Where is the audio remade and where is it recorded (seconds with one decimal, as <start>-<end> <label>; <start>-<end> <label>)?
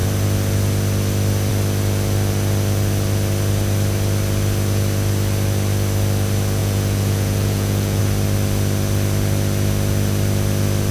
0.0-6.6 recorded; 6.6-8.0 remade; 8.0-10.9 recorded